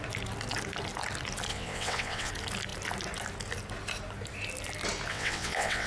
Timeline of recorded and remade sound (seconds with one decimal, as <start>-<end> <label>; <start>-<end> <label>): 0.0-1.5 recorded; 1.5-2.3 remade; 2.3-5.1 recorded; 5.1-5.9 remade